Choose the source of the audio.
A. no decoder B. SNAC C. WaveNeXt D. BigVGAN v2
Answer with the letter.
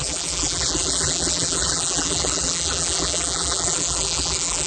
D